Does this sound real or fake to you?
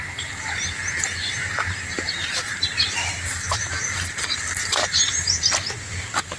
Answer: fake